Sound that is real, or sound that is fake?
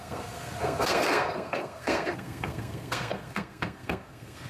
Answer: fake